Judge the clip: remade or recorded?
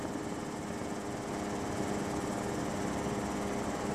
recorded